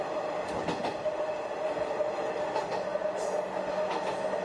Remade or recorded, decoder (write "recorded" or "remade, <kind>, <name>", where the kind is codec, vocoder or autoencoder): recorded